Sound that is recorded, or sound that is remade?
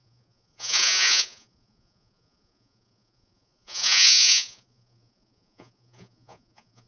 remade